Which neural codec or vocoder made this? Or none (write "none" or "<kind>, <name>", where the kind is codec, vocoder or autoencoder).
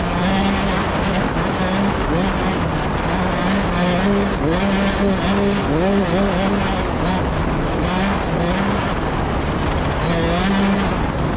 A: none